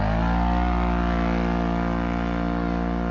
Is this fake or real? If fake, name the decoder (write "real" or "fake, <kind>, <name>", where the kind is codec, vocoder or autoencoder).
real